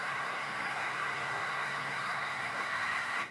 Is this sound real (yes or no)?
no